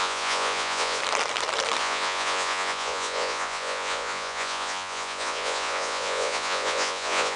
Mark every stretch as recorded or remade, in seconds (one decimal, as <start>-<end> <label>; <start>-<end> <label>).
0.0-1.0 remade; 1.0-1.8 recorded; 1.8-7.4 remade